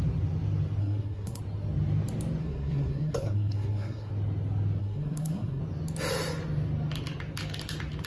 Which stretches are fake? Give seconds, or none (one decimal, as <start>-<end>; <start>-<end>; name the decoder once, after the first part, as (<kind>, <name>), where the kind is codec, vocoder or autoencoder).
0.8-1.4 (codec, SNAC); 2.4-4.1; 4.8-5.6